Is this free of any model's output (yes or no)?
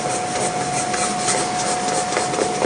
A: yes